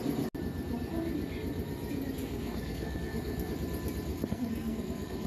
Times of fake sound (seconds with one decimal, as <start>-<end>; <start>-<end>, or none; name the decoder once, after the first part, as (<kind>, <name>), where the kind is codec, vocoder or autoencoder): 2.2-3.5 (codec, SNAC); 4.1-5.3